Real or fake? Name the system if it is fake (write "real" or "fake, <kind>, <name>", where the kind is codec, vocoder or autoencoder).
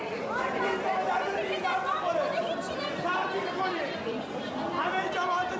fake, vocoder, BigVGAN v2